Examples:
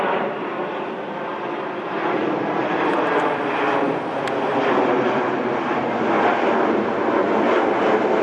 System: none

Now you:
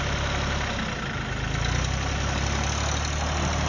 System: none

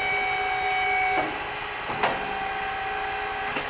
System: none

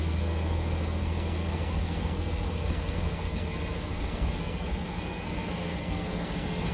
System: codec, SNAC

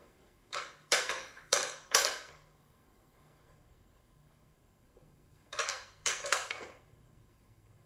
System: codec, SNAC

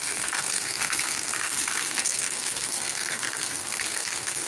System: codec, SNAC